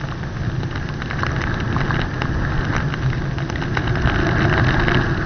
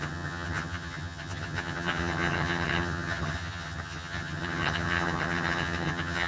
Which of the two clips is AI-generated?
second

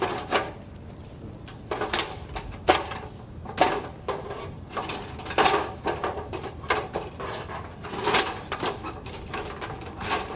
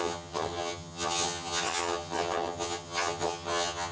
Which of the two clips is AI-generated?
second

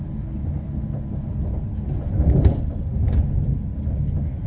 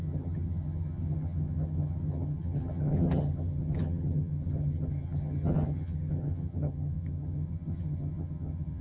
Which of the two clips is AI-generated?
second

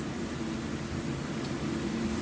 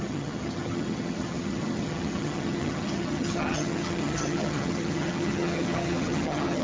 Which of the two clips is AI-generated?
second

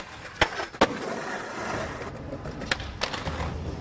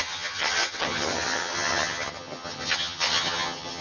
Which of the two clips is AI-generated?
second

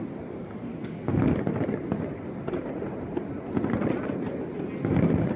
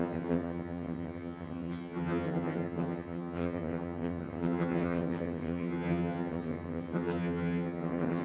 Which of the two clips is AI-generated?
second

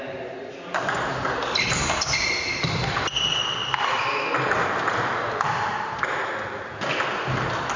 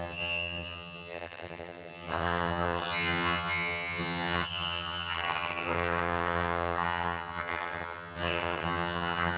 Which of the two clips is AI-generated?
second